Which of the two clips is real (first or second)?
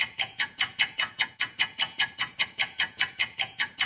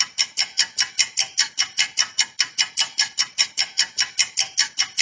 second